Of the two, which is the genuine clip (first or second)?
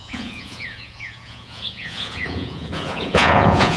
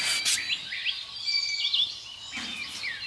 second